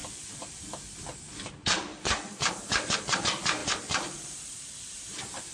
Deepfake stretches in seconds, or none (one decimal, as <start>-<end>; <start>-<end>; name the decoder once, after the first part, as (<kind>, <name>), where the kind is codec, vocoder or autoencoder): 0.0-5.5 (vocoder, BigVGAN v2)